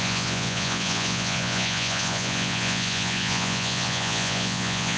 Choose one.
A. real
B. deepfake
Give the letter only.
B